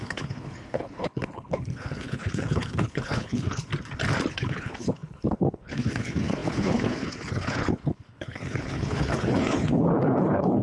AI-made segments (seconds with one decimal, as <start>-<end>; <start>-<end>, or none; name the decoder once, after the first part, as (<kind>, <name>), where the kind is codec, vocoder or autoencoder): 0.0-3.7 (codec, HILCodec); 4.3-10.6